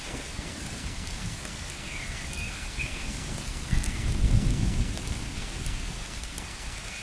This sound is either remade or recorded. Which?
remade